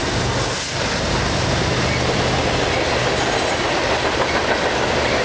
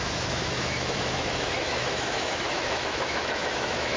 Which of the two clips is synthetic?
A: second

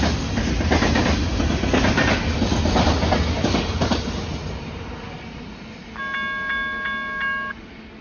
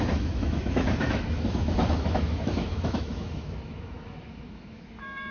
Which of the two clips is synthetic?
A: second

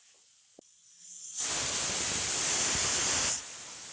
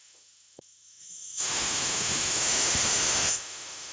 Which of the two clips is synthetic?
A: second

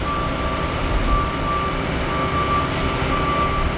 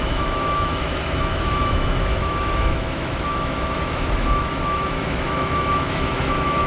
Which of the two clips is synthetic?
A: second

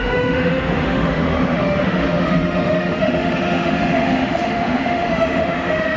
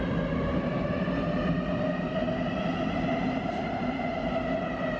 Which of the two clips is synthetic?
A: first